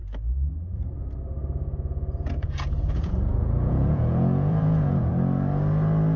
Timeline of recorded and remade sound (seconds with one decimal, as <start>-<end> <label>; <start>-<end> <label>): 0.0-1.4 recorded; 1.4-5.1 remade; 5.1-6.2 recorded